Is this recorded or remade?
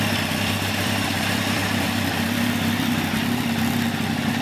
remade